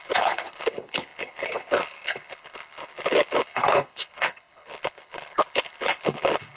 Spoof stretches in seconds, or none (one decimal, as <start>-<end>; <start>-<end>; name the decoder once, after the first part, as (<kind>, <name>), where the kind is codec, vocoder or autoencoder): 0.0-6.6 (codec, HILCodec)